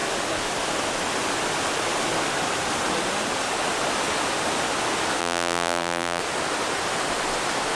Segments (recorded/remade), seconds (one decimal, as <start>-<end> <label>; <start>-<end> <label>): 0.0-5.2 recorded; 5.2-6.2 remade; 6.2-7.8 recorded

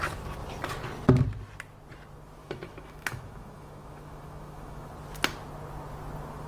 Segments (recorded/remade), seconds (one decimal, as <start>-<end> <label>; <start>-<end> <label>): 0.0-2.4 recorded; 2.4-4.9 remade; 4.9-6.5 recorded

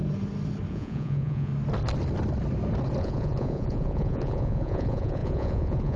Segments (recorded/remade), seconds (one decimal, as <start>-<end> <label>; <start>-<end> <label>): 0.0-0.7 recorded; 0.7-1.5 remade; 1.5-3.0 recorded; 3.0-6.0 remade

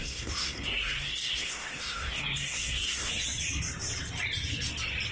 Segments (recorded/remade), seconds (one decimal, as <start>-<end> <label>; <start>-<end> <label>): 0.0-3.1 remade; 3.1-5.1 recorded

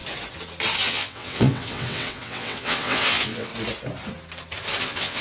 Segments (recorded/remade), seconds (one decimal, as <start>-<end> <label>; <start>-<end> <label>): 0.0-0.8 recorded; 0.8-3.5 remade; 3.5-4.8 recorded; 4.8-5.2 remade

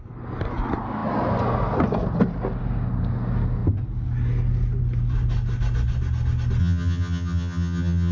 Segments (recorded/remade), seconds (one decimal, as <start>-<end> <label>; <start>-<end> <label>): 0.0-6.6 recorded; 6.6-8.1 remade

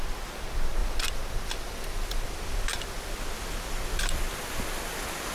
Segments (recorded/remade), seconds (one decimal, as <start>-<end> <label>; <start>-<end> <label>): 0.0-5.3 recorded

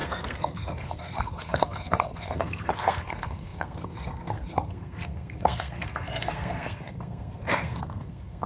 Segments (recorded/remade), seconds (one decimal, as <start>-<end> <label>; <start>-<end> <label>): 0.0-8.5 remade